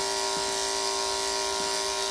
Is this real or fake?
real